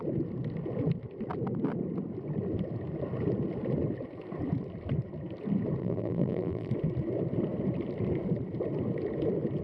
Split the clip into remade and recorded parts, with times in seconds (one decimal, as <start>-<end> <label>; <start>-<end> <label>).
0.0-5.8 recorded; 5.8-6.7 remade; 6.7-9.6 recorded